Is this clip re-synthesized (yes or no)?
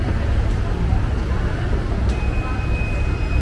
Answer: no